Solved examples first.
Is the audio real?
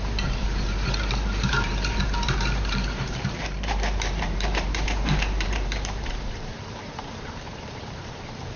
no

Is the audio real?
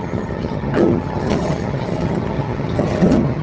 no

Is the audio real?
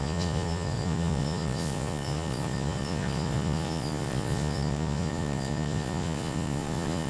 no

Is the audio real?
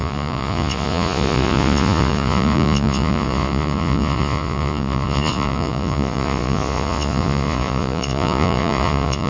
no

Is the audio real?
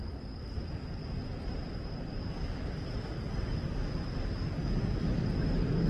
yes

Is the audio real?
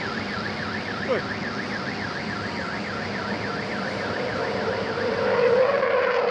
yes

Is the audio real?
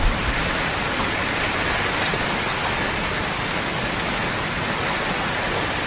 yes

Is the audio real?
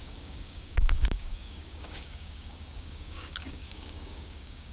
no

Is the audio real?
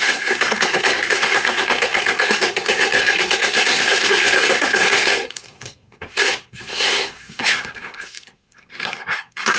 no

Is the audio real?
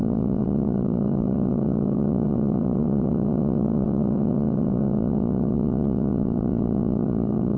no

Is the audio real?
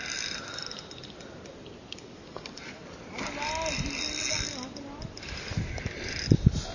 yes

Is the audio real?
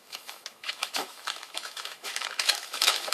no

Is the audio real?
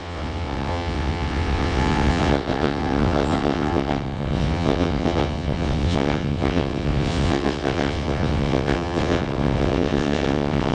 no